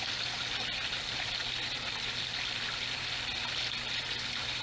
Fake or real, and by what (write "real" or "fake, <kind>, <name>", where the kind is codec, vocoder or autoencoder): real